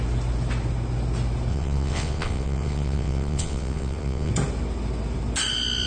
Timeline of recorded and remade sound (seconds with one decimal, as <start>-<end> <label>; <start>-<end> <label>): 0.0-1.5 recorded; 1.5-4.3 remade; 4.3-5.9 recorded